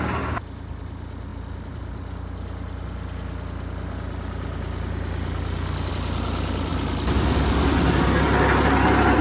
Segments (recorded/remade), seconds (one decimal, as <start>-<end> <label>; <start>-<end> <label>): 0.0-9.2 recorded